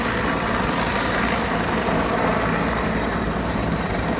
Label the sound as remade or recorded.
remade